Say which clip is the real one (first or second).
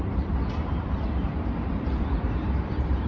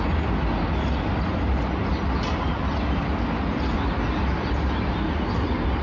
second